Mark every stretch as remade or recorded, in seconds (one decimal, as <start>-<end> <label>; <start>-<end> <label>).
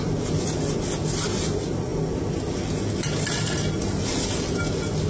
0.0-5.1 recorded